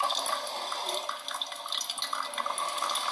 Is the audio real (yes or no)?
yes